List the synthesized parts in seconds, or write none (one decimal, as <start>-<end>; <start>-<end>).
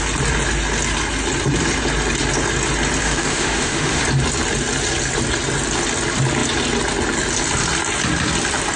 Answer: 3.0-4.0